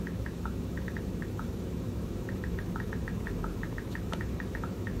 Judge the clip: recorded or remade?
remade